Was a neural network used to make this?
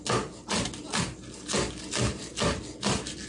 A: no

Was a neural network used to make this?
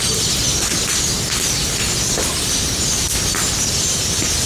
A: no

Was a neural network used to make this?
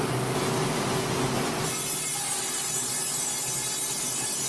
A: no